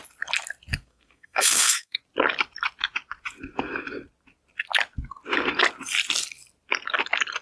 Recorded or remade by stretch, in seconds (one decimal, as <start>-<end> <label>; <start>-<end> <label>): 0.0-0.7 recorded; 0.7-2.0 remade; 2.0-7.4 recorded